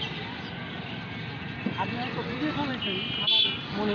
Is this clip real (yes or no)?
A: yes